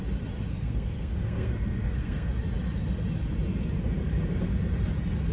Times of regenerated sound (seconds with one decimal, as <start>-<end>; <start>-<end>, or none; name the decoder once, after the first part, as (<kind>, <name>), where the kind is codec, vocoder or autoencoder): 0.5-2.3 (codec, SNAC)